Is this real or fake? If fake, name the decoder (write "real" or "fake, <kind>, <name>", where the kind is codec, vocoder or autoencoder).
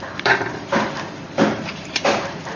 fake, vocoder, BigVGAN v2